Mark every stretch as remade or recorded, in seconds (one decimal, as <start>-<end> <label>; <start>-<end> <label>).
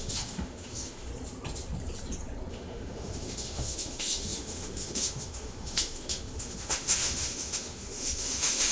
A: 0.0-1.1 remade; 1.1-2.5 recorded; 2.5-8.7 remade